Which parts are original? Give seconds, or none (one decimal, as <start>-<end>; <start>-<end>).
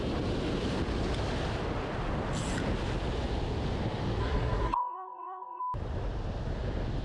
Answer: 0.0-4.2; 5.6-7.0